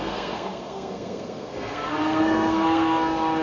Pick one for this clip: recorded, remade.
remade